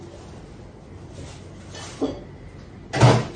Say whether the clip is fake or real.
real